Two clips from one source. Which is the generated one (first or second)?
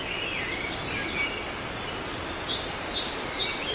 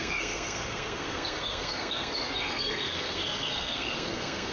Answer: second